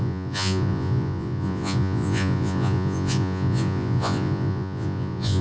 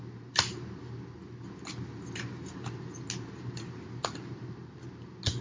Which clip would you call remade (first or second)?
first